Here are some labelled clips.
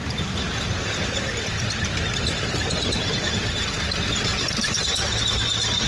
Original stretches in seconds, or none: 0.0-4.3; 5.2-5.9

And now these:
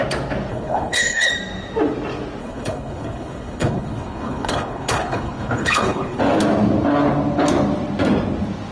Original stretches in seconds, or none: 0.0-0.5; 1.3-2.4; 6.2-8.7

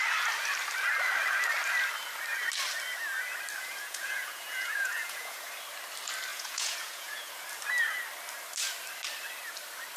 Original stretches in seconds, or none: 0.0-3.6; 5.5-6.3; 7.3-10.0

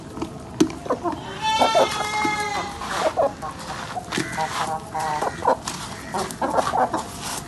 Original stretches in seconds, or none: 0.0-7.5

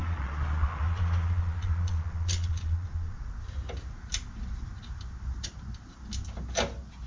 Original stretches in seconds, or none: 3.3-7.1

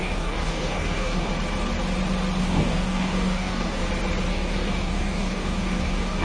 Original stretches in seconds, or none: 1.3-2.4; 3.8-4.3